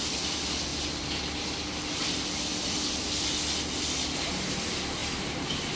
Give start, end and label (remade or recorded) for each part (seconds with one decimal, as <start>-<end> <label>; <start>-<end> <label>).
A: 0.0-5.8 recorded